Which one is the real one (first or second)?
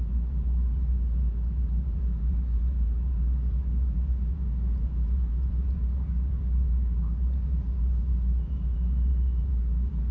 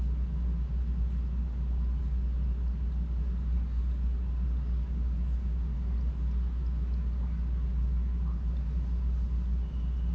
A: second